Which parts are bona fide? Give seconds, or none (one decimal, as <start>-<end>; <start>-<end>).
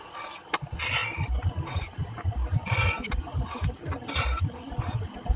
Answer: 0.0-5.4